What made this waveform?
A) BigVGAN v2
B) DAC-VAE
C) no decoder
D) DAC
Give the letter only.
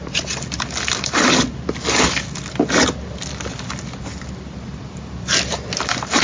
C